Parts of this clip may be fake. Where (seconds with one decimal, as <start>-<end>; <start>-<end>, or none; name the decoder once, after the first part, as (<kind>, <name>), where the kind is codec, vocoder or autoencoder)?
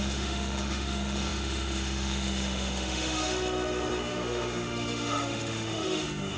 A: 0.0-6.4 (autoencoder, DAC-VAE)